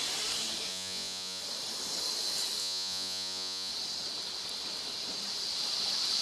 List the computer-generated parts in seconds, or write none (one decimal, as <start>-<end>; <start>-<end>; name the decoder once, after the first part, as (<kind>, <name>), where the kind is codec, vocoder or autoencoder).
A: 0.7-1.4 (vocoder, Vocos); 2.6-3.7